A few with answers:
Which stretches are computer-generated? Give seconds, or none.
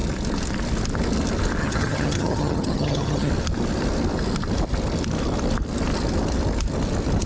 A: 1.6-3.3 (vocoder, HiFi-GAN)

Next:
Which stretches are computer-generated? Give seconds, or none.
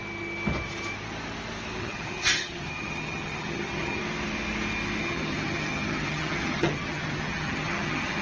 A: 1.8-4.0 (vocoder, HiFi-GAN); 5.0-8.2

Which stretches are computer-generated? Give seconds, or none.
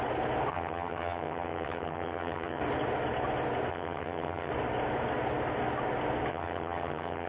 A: 0.5-2.6 (vocoder, HiFi-GAN); 3.7-4.5; 6.3-7.3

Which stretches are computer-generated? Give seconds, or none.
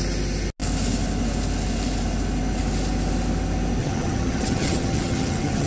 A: 3.8-5.7 (vocoder, HiFi-GAN)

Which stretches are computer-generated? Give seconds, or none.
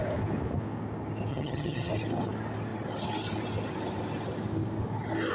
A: 1.3-1.9 (vocoder, HiFi-GAN)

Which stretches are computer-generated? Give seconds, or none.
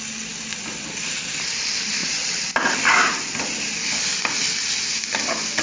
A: none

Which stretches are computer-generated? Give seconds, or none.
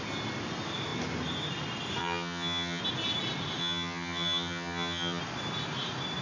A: 2.0-2.8 (vocoder, HiFi-GAN); 3.6-5.2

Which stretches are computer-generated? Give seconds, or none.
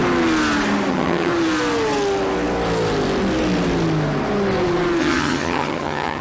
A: 0.9-1.3 (vocoder, HiFi-GAN); 5.0-6.2